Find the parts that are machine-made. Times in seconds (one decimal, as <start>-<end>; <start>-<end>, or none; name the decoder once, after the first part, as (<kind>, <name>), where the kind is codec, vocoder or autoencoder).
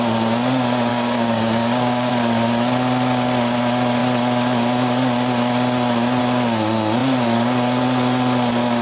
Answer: 0.9-2.1 (codec, DAC)